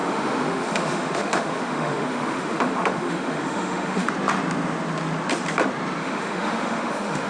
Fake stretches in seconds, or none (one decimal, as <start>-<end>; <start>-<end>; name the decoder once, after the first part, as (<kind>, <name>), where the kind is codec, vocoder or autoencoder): 0.0-4.1 (autoencoder, DAC-VAE); 6.0-7.3